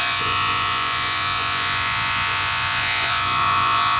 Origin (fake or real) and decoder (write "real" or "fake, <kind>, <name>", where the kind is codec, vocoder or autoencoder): fake, vocoder, Vocos